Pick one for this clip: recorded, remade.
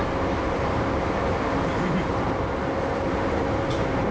remade